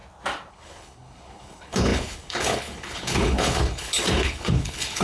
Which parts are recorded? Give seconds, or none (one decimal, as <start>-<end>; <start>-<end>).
0.0-0.5